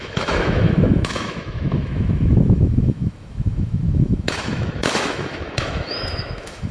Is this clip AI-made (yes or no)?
yes